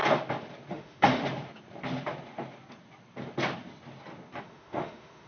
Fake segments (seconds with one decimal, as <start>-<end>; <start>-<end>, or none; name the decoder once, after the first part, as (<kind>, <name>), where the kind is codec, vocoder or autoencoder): 0.7-1.2 (autoencoder, DAC-VAE); 4.4-5.3